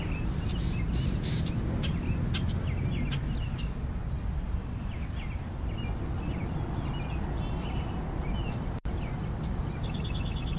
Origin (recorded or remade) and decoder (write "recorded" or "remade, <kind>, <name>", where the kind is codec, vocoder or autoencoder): recorded